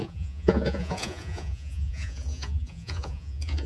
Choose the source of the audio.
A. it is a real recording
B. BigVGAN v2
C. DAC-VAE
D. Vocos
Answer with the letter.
D